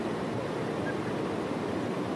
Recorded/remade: recorded